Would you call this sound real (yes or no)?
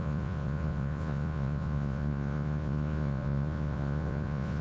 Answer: no